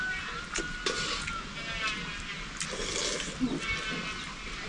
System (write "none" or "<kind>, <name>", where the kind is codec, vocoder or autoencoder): none